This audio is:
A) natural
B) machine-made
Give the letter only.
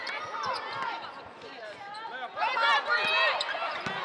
A